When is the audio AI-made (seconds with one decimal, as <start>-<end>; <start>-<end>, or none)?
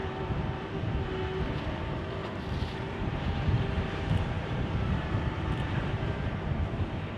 0.0-0.7; 2.2-6.0